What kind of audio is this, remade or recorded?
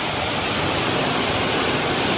recorded